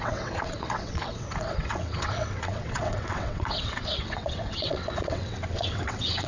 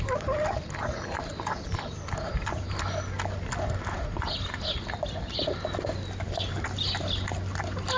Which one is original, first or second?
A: second